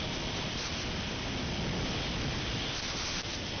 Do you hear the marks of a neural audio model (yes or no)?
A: no